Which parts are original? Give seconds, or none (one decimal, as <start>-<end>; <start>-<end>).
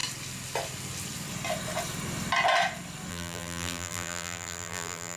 0.0-3.1